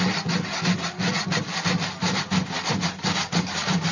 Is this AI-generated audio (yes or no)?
no